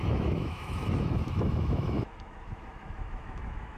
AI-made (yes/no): yes